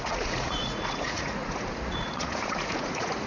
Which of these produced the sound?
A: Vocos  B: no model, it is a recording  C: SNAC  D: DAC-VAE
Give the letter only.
A